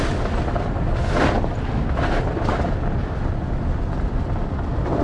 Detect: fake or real real